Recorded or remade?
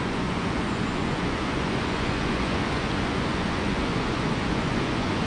remade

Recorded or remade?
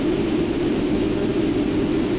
recorded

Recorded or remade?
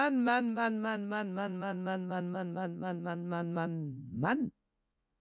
remade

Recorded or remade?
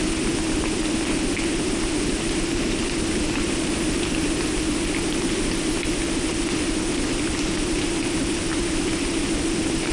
recorded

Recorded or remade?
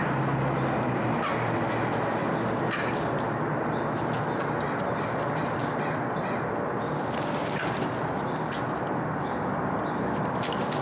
recorded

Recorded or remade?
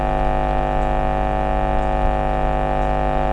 recorded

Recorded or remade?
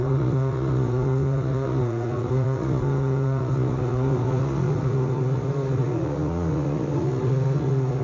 remade